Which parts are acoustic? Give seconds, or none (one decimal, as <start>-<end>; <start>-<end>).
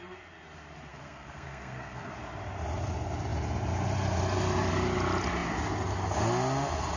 0.0-0.9; 2.1-7.0